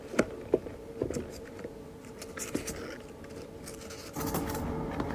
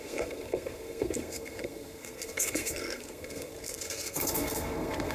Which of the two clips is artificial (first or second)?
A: second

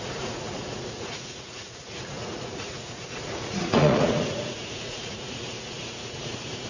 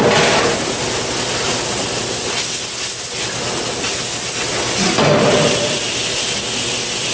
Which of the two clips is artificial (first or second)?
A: first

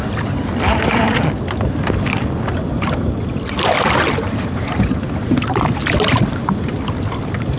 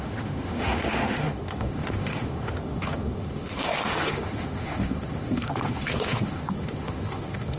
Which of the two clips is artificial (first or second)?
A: second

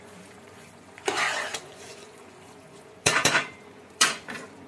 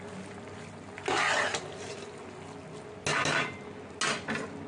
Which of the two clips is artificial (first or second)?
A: first